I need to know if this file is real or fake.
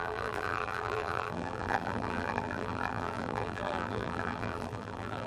fake